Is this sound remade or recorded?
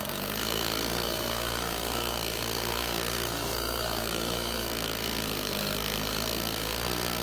remade